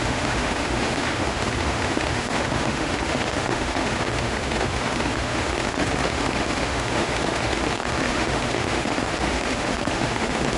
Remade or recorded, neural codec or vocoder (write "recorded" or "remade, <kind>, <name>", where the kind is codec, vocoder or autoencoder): remade, autoencoder, DAC-VAE